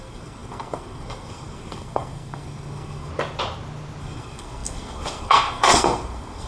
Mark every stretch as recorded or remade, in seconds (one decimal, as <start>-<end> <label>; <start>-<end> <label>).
0.0-3.1 remade; 3.1-4.0 recorded; 4.0-6.5 remade